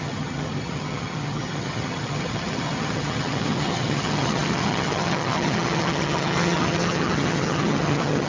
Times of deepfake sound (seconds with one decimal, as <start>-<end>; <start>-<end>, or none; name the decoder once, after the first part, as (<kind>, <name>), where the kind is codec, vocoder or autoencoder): 0.0-8.3 (vocoder, HiFi-GAN)